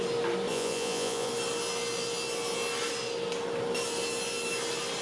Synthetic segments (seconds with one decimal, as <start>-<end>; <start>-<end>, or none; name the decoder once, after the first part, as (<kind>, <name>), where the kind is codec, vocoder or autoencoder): 0.5-1.3 (vocoder, Vocos)